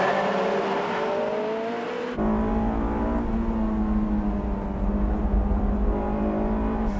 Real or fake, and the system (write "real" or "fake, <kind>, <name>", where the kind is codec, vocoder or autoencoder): real